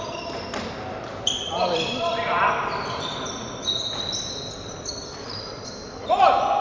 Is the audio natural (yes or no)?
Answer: no